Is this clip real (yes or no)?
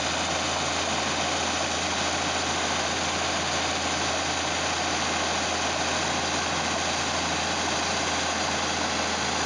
yes